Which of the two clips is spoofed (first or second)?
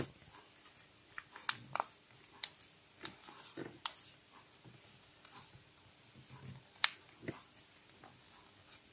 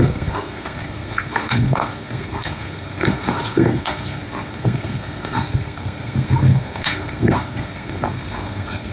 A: second